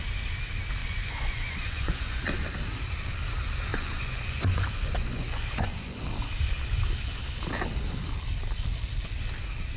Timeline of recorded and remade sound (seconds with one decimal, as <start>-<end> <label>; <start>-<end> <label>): 0.0-0.8 recorded; 0.8-2.2 remade; 2.2-3.7 recorded; 3.7-6.0 remade; 6.0-9.8 recorded